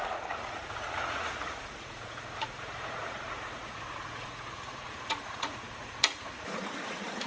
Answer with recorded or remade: remade